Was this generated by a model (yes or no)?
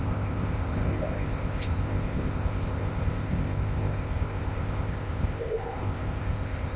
yes